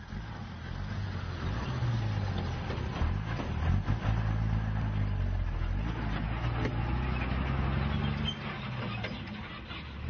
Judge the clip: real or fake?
real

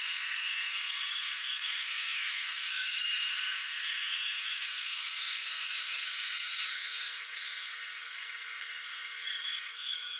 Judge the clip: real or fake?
fake